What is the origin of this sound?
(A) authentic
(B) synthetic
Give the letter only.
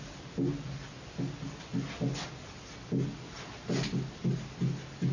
A